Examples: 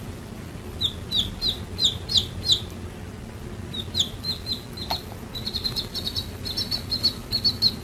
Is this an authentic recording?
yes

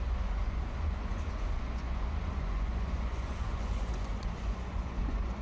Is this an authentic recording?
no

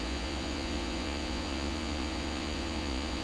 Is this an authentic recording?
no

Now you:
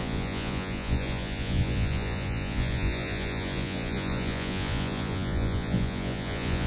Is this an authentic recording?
no